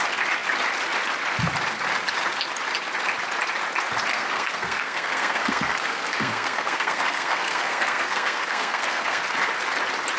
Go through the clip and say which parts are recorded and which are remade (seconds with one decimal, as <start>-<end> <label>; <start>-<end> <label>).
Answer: 0.0-4.1 recorded; 4.1-9.2 remade; 9.2-10.2 recorded